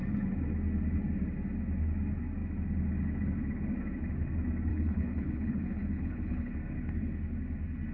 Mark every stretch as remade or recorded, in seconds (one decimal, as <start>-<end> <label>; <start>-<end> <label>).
0.0-4.7 recorded; 4.7-6.5 remade; 6.5-7.9 recorded